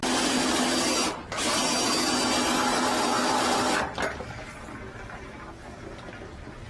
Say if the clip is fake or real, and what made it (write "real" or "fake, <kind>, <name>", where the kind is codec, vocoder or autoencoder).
real